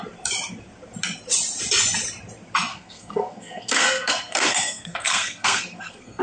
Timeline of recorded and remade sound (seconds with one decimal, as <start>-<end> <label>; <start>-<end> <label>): 0.0-2.7 recorded; 2.7-6.2 remade